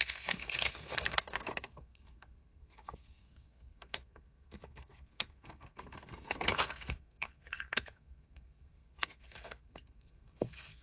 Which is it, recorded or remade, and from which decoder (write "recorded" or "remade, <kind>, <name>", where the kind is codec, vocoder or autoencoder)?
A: remade, codec, SNAC